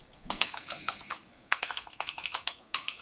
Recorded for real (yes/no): no